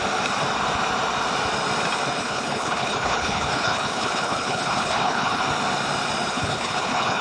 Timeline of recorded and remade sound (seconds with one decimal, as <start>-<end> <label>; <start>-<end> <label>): 0.0-2.2 recorded; 2.2-5.4 remade; 5.4-6.3 recorded; 6.3-7.2 remade